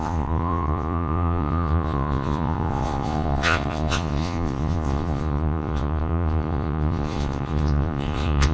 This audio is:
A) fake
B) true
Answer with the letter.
A